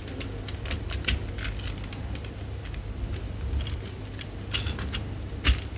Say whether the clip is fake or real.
real